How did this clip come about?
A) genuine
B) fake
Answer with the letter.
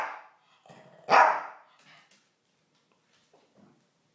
A